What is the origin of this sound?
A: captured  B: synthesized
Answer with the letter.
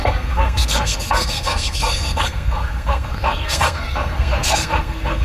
B